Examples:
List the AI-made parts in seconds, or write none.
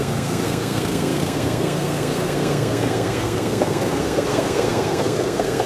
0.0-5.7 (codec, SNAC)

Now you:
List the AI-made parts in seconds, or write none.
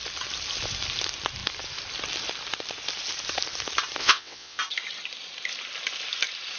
4.0-4.6 (vocoder, WaveNeXt)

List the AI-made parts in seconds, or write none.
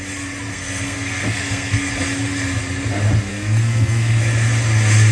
0.5-1.9 (codec, SNAC); 3.3-4.2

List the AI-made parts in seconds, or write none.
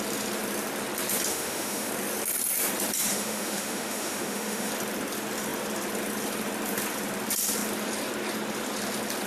1.3-1.9 (autoencoder, DAC-VAE); 3.1-4.7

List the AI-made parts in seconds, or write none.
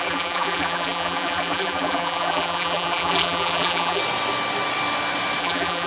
0.0-4.0 (vocoder, BigVGAN v2); 5.4-5.9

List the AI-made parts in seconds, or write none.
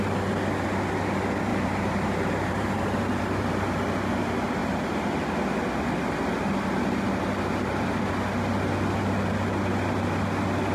1.5-3.8 (vocoder, BigVGAN v2)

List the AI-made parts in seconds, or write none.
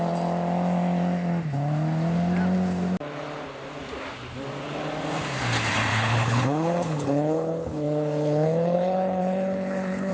5.9-10.1 (codec, HILCodec)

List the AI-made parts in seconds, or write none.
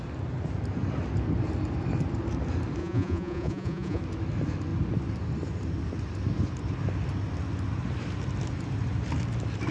2.8-4.0 (vocoder, Vocos)